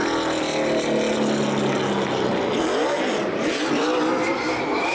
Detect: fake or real real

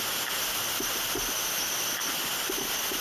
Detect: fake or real real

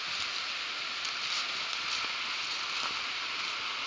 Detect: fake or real real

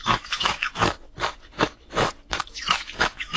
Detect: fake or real fake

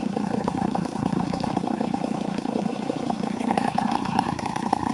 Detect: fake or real fake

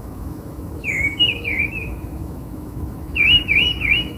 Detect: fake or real fake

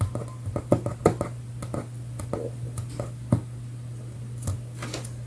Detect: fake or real real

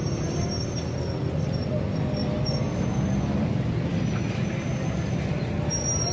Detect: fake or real real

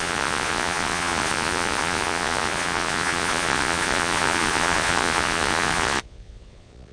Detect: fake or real fake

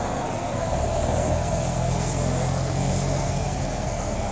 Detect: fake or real fake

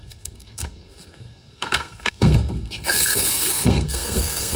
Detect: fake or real fake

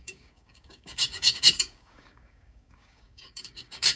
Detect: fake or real fake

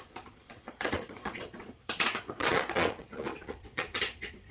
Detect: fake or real fake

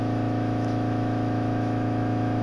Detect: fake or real fake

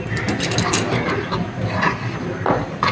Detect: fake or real real